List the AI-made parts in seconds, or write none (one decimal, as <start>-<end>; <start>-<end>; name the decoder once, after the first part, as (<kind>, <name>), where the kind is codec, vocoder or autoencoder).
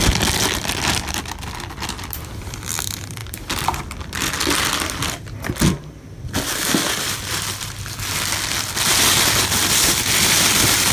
none